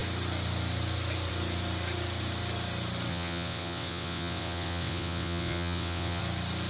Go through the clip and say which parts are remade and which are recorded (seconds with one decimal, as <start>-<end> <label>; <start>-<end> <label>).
0.0-3.1 recorded; 3.1-6.2 remade; 6.2-6.7 recorded